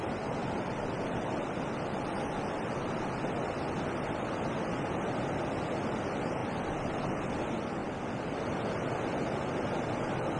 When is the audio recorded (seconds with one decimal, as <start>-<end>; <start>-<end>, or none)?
0.0-0.4; 3.0-7.8; 8.9-10.4

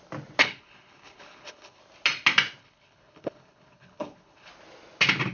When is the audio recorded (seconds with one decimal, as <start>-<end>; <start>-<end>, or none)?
0.0-0.4; 1.8-2.6; 4.5-5.3

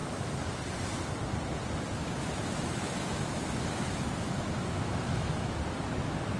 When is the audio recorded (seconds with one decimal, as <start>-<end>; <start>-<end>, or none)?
0.0-2.0; 5.6-6.4

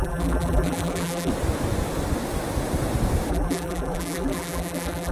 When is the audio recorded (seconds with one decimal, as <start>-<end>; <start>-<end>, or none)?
1.3-3.3

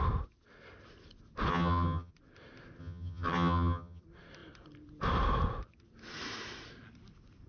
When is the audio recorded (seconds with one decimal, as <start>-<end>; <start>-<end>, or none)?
0.0-1.5; 2.1-2.8; 4.0-7.5

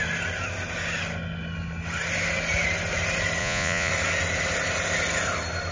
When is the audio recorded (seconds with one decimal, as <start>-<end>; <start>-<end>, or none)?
0.0-3.4; 3.9-5.7

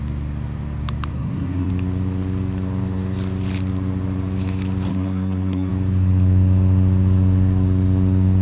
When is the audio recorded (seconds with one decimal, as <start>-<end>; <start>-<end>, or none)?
0.0-1.1; 1.7-4.9; 5.7-8.4

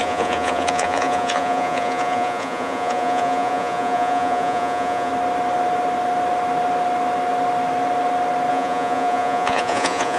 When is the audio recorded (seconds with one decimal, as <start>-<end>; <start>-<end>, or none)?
5.1-8.5